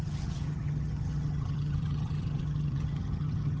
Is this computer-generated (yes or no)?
yes